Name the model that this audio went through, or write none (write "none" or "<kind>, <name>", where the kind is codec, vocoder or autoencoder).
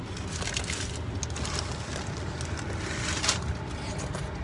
none